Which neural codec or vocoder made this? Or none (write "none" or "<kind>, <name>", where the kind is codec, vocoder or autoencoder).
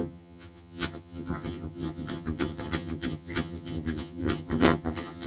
vocoder, HiFi-GAN